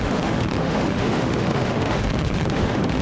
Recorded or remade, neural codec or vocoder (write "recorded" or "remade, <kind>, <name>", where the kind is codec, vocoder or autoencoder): remade, autoencoder, DAC-VAE